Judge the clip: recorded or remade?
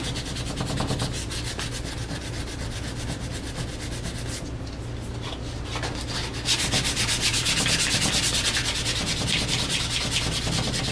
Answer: recorded